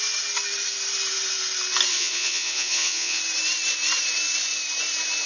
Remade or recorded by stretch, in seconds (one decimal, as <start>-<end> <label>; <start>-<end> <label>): 0.0-1.9 recorded; 1.9-3.2 remade; 3.2-5.3 recorded